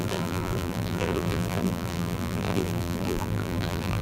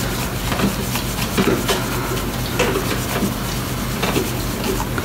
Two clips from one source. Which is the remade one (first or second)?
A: first